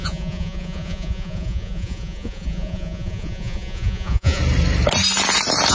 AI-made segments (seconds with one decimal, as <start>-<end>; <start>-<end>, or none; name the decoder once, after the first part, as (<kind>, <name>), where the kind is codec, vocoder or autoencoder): 0.0-4.4 (vocoder, Vocos)

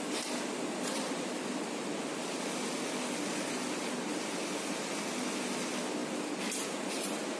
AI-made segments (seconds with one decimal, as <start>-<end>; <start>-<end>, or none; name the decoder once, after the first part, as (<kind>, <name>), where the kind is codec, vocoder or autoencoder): none

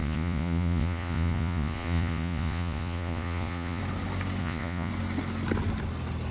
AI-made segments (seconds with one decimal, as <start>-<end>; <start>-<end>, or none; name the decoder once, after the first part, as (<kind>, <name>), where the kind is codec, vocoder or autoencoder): 0.0-3.8 (vocoder, Vocos); 4.4-4.9